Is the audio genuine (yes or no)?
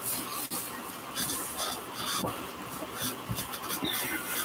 yes